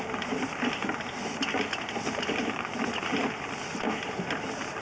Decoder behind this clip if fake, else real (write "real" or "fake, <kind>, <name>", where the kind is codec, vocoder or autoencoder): real